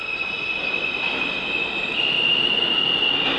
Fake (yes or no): no